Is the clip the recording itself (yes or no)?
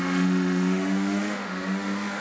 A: no